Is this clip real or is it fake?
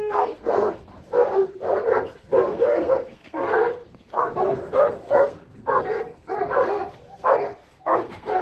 fake